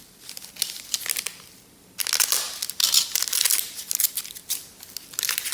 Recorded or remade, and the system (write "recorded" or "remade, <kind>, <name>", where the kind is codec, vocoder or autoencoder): recorded